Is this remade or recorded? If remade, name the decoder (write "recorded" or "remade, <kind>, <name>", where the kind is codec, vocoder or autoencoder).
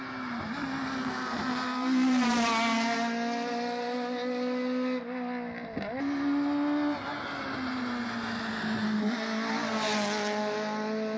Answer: recorded